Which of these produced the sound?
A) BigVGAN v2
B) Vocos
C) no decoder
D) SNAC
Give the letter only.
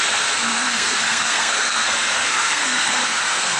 D